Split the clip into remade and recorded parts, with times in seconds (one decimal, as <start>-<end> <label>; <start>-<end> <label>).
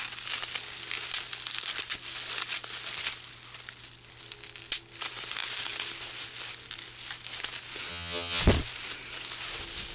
0.0-7.9 recorded; 7.9-8.4 remade; 8.4-9.9 recorded